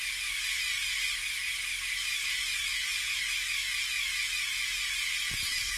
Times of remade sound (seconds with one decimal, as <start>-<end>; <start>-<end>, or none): 0.0-3.6; 4.9-5.8